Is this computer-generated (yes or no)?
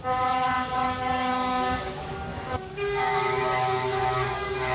yes